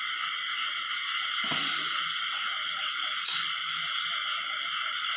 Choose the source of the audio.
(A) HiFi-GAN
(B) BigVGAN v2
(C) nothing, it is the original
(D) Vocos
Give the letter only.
C